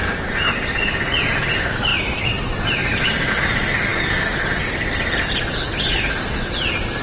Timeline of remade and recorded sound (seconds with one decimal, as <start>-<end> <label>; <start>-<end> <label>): 0.0-0.5 remade; 0.5-1.9 recorded; 1.9-3.3 remade; 3.3-7.0 recorded